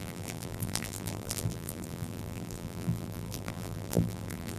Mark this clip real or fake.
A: fake